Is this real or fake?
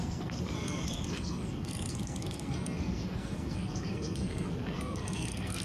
fake